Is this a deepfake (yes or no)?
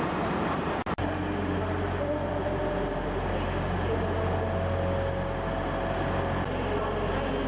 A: no